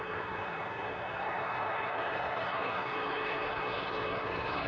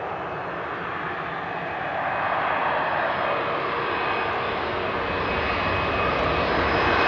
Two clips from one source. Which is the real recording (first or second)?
second